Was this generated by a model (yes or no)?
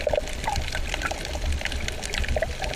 no